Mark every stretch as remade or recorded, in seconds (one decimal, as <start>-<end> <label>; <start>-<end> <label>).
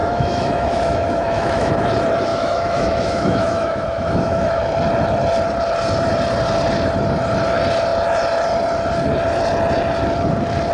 0.0-1.7 remade; 1.7-2.3 recorded; 2.3-4.6 remade; 4.6-10.7 recorded